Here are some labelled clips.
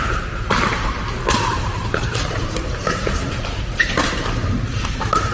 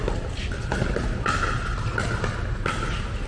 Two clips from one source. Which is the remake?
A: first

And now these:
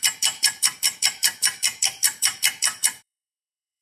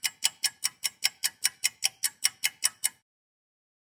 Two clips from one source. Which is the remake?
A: first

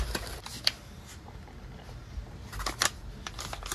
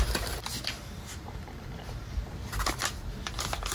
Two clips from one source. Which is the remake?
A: second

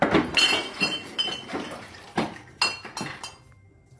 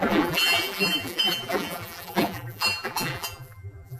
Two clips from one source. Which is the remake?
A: second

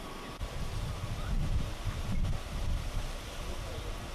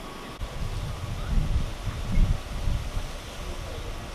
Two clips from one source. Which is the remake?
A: first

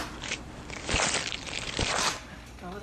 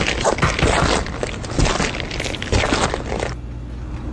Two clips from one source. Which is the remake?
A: first